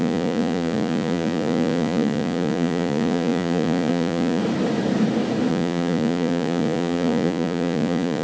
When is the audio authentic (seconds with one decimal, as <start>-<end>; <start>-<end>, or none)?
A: 4.4-5.5